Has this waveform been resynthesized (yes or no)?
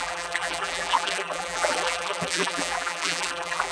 yes